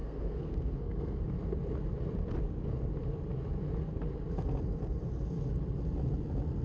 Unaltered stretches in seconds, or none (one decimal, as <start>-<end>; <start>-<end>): 1.2-6.6